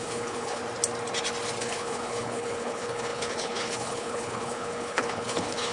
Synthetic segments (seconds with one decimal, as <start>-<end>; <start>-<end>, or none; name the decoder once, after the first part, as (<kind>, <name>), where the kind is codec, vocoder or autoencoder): 0.0-0.6 (codec, HILCodec); 1.6-5.7